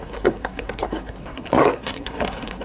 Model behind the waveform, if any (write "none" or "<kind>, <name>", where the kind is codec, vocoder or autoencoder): codec, SNAC